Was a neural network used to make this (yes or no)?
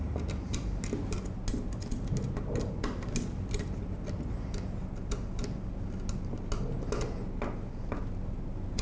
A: no